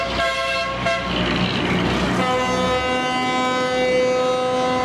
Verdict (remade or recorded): recorded